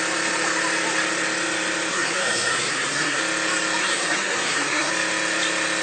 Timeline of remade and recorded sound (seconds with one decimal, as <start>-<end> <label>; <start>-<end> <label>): 0.0-1.9 recorded; 1.9-3.2 remade; 3.2-3.8 recorded; 3.8-4.9 remade; 4.9-5.8 recorded